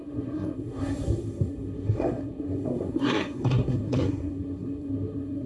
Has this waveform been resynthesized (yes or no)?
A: yes